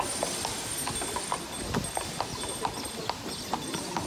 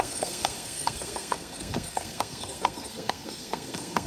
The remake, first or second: second